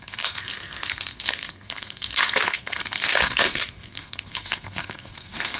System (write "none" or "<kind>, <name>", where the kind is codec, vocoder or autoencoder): codec, SNAC